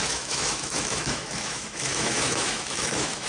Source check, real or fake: fake